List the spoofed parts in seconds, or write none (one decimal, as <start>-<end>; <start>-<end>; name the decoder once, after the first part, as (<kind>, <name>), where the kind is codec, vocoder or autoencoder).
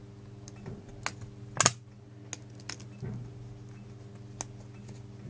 none